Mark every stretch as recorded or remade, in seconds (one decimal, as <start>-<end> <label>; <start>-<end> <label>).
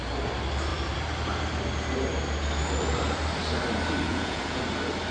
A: 0.0-4.1 recorded; 4.1-4.6 remade; 4.6-5.1 recorded